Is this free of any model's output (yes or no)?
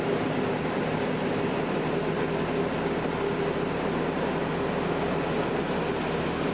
yes